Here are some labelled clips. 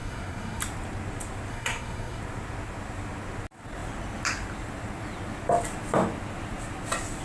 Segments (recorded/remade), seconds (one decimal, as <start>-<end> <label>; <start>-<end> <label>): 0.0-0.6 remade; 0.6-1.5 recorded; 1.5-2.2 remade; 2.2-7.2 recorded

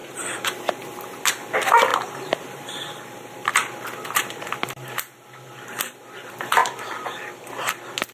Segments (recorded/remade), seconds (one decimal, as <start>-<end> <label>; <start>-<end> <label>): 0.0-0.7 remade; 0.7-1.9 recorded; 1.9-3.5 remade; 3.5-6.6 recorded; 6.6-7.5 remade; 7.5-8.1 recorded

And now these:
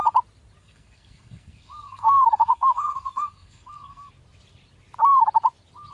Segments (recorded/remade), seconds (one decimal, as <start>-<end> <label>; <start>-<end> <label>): 0.0-0.6 recorded; 0.6-4.1 remade; 4.1-5.9 recorded